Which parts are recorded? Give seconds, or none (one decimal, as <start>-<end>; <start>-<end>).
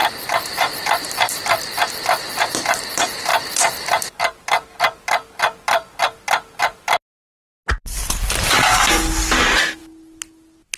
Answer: 0.0-0.5; 3.3-8.1; 9.8-10.8